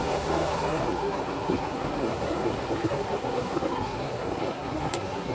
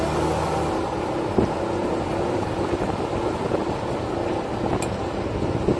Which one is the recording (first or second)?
second